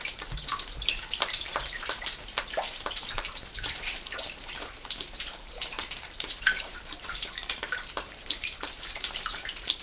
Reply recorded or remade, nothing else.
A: remade